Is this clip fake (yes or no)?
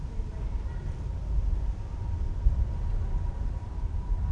no